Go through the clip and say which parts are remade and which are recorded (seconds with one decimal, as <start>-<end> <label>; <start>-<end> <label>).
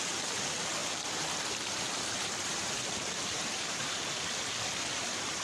0.0-5.4 remade